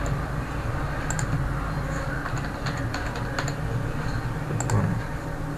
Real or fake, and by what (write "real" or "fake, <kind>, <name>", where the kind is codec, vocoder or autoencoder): real